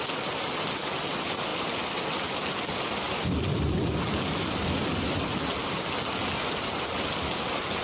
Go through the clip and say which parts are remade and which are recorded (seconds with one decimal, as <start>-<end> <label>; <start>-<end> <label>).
0.0-7.8 recorded